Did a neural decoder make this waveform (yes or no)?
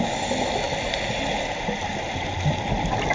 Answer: no